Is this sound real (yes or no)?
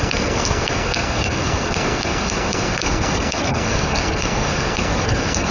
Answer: no